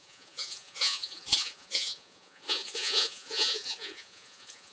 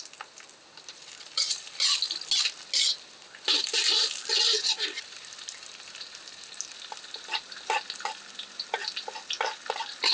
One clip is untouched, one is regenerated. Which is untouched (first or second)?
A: second